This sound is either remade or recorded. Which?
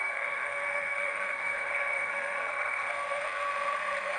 remade